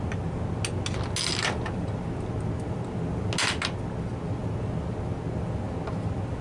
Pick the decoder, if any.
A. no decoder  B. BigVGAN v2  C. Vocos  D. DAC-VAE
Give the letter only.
A